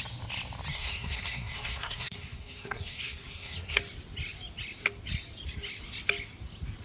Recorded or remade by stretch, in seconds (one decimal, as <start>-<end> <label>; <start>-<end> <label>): 0.0-0.7 recorded; 0.7-3.8 remade; 3.8-6.8 recorded